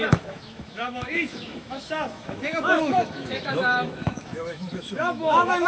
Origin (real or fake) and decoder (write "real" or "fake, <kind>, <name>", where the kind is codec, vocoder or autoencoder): fake, autoencoder, DAC-VAE